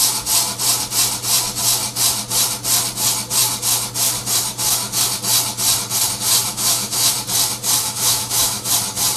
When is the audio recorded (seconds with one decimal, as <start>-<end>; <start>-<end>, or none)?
0.0-6.5; 7.1-7.8; 8.7-9.2